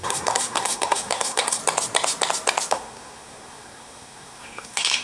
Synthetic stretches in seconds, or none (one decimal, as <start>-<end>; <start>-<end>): 0.0-1.6; 2.7-5.0